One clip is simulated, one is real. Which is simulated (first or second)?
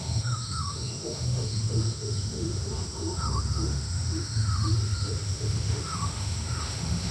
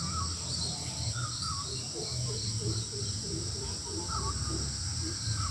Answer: first